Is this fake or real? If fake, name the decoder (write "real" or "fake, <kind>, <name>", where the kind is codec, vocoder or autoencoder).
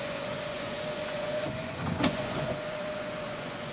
fake, vocoder, Vocos